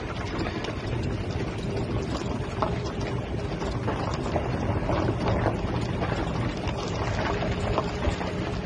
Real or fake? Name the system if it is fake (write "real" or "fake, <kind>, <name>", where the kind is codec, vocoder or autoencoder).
real